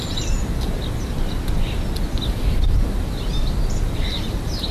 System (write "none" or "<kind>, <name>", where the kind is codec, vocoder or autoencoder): none